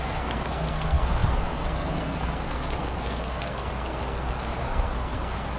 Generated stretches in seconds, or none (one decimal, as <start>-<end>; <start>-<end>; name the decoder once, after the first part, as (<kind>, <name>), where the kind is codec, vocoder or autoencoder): 0.0-5.6 (codec, SNAC)